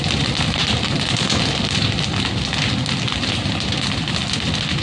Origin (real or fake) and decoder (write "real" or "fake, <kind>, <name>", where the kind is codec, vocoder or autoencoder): real